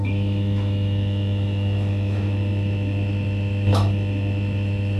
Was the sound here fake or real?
fake